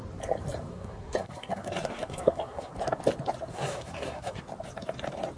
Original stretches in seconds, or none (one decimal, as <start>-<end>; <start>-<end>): 0.0-0.7; 2.7-3.5; 4.4-5.4